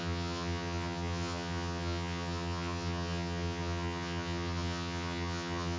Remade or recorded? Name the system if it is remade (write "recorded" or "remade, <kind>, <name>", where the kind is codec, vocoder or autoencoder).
remade, vocoder, HiFi-GAN